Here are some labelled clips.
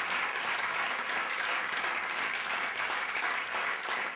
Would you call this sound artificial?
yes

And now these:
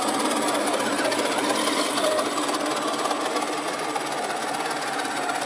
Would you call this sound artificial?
no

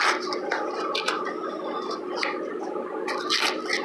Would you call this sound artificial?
no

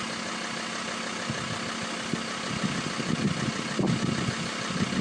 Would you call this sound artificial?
no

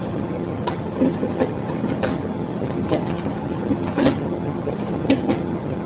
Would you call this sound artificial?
yes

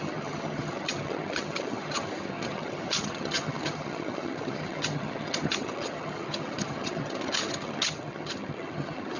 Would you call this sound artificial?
yes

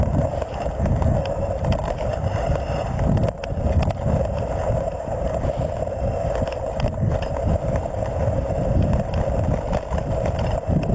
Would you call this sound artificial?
no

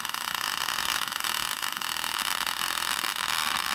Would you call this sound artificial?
yes